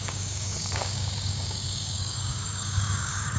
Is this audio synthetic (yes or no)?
yes